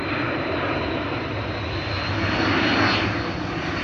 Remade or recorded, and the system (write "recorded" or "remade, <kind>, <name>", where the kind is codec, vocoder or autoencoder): recorded